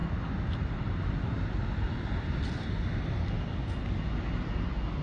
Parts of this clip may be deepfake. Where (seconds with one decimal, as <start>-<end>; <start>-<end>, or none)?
none